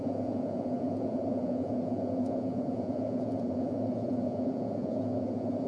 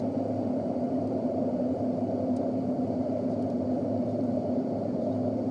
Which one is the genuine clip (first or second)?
second